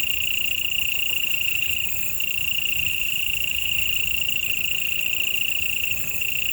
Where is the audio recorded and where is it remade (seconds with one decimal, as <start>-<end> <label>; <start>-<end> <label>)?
0.0-2.9 recorded; 2.9-3.7 remade; 3.7-6.5 recorded